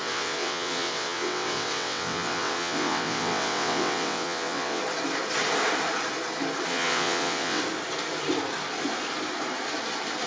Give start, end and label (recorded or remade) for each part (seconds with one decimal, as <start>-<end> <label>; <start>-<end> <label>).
0.0-4.8 remade; 4.8-6.7 recorded; 6.7-7.6 remade; 7.6-10.3 recorded